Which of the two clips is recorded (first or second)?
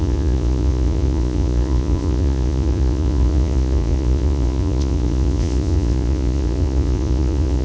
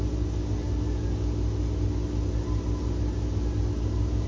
second